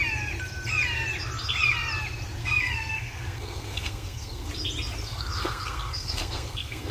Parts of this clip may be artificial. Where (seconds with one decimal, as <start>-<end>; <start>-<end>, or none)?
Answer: 2.4-4.5; 5.0-6.9